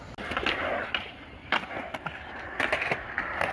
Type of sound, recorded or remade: recorded